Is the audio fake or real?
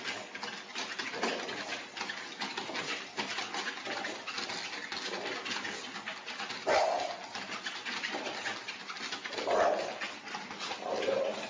real